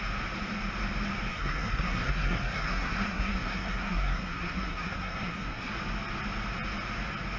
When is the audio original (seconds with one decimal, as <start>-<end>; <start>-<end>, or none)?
0.0-1.3; 5.7-7.4